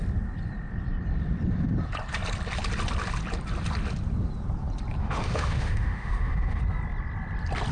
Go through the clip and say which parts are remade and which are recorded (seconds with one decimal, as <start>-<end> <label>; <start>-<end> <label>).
0.0-5.0 recorded; 5.0-6.6 remade; 6.6-7.7 recorded